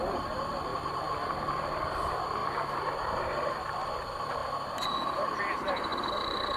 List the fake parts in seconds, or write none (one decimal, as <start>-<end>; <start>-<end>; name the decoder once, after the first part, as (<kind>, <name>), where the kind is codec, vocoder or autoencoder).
0.0-6.6 (vocoder, BigVGAN v2)